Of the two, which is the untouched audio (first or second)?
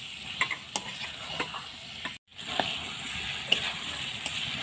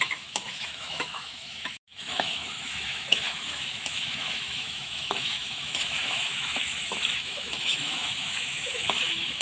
first